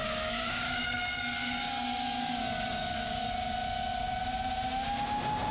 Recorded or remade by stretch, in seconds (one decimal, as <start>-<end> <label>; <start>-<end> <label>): 0.0-3.3 remade; 3.3-5.5 recorded

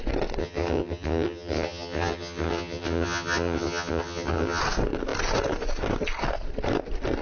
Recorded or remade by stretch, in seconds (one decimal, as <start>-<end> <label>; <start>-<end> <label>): 0.0-0.4 recorded; 0.4-4.6 remade; 4.6-7.2 recorded

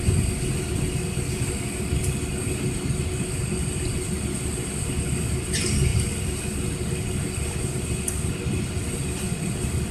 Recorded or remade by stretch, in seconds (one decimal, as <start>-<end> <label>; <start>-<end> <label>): 0.0-9.9 recorded

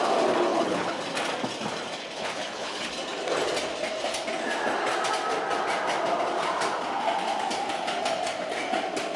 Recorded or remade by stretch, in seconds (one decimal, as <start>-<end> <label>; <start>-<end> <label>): 0.0-0.5 recorded; 0.5-1.0 remade; 1.0-2.0 recorded; 2.0-2.9 remade; 2.9-9.2 recorded

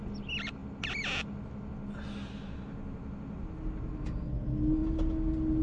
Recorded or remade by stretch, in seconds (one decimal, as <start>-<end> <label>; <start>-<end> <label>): 0.0-5.6 recorded

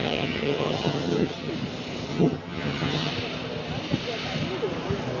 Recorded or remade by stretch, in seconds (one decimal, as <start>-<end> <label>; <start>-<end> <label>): 0.0-1.5 remade; 1.5-2.1 recorded; 2.1-3.1 remade; 3.1-5.2 recorded

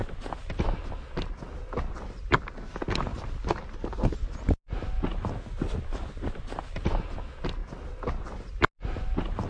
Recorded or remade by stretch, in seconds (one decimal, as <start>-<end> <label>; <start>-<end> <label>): 0.0-9.5 recorded

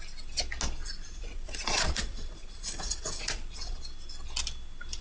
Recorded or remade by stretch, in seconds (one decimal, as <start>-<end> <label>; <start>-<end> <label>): 0.0-0.8 recorded; 0.8-3.8 remade; 3.8-5.0 recorded